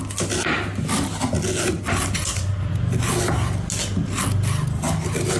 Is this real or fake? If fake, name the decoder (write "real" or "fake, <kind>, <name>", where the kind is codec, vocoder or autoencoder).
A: real